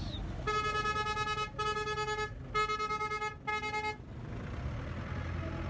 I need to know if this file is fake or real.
real